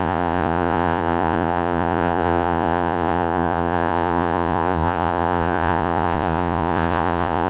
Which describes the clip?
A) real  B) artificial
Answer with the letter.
B